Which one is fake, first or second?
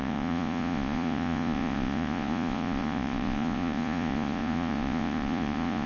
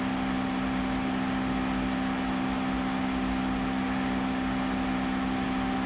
first